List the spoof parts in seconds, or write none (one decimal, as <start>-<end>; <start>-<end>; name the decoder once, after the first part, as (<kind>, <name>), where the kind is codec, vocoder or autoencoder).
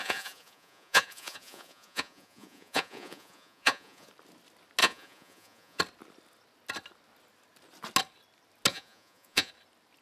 0.0-4.1 (vocoder, Vocos); 4.8-5.8; 8.7-9.5